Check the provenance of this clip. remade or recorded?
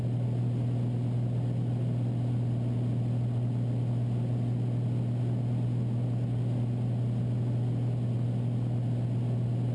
recorded